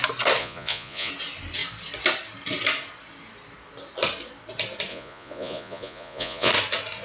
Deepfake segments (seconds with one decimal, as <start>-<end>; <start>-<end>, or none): 0.4-1.1; 4.9-6.5